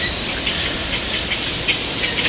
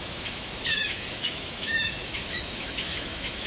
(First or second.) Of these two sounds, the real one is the first